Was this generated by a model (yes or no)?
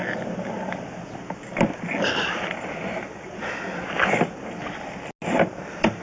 no